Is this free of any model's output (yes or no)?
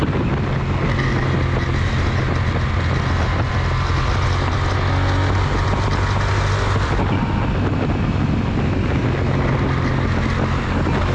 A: yes